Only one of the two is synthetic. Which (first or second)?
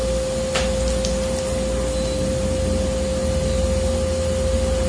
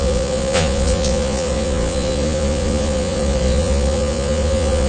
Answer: second